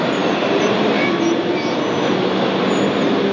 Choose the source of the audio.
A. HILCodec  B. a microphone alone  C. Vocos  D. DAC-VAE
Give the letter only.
B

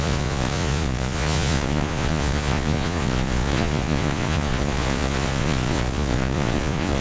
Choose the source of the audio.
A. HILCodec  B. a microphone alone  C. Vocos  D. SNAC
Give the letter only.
C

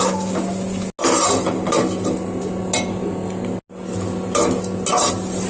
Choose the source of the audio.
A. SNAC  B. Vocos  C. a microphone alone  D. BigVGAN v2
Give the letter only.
C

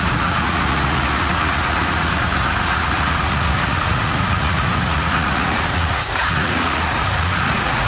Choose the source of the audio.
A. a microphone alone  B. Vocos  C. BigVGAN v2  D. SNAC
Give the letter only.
B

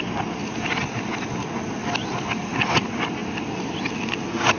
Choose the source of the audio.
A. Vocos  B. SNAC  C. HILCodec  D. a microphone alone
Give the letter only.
D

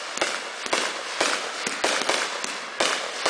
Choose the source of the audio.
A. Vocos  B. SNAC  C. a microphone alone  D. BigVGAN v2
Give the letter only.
C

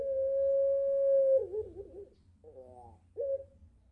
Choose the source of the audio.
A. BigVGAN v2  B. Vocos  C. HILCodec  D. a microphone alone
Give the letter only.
D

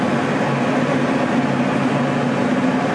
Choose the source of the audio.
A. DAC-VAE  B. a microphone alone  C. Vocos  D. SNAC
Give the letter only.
B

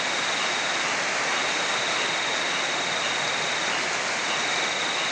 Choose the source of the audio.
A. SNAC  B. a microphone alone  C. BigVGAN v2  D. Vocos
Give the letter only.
B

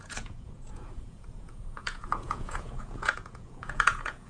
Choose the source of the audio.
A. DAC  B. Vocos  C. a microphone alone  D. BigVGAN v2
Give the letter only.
B